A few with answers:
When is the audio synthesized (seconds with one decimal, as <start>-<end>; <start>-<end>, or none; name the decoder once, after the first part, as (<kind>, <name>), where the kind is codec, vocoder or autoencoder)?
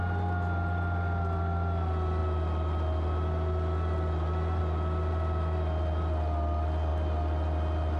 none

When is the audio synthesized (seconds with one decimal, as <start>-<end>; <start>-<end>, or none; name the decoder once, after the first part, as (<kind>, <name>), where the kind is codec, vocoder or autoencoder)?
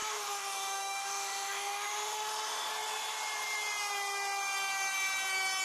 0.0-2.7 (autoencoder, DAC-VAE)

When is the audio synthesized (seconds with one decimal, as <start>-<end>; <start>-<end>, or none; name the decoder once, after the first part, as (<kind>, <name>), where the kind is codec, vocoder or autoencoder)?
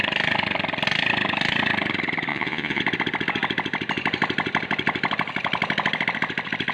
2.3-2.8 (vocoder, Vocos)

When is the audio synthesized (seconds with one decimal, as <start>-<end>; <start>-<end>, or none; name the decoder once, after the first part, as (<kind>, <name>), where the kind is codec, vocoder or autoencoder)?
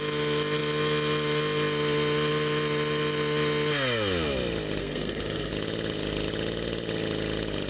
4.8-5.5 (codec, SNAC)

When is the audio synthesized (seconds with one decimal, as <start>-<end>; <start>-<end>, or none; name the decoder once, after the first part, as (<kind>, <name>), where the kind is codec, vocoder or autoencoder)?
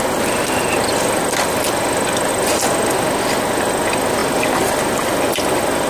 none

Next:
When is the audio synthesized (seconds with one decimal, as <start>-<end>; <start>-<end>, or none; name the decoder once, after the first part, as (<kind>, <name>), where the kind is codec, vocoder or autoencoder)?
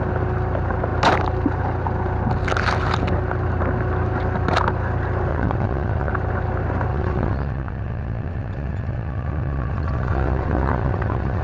5.3-6.1 (vocoder, WaveNeXt); 6.9-11.4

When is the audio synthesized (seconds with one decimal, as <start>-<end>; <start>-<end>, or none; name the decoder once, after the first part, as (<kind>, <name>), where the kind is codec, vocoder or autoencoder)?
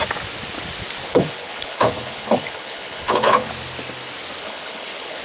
1.1-3.5 (codec, HILCodec); 4.4-5.2